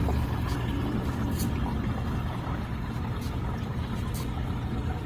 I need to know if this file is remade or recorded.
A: recorded